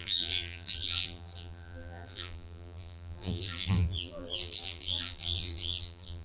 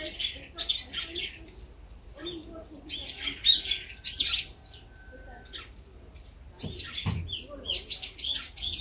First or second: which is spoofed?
first